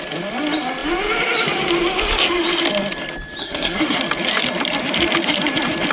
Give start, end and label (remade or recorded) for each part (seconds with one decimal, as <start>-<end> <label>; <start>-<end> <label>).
0.0-3.4 recorded; 3.4-4.0 remade; 4.0-5.9 recorded